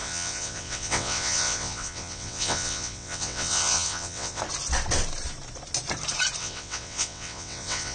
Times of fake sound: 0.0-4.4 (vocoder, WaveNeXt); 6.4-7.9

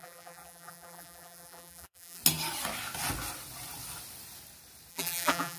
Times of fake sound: 0.0-2.2 (vocoder, BigVGAN v2); 4.9-5.6